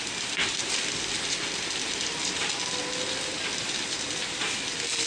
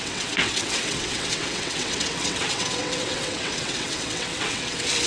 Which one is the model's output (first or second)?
second